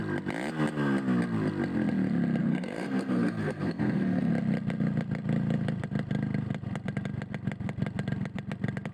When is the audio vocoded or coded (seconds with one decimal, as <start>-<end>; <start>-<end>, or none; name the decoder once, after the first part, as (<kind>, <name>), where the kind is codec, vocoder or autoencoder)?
2.4-4.3 (codec, SNAC)